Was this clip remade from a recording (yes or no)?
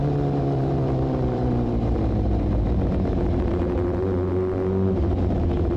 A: yes